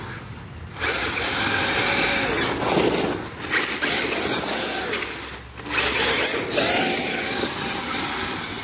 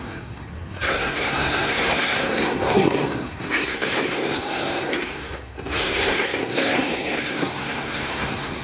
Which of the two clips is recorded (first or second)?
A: first